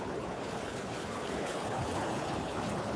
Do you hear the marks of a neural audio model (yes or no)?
yes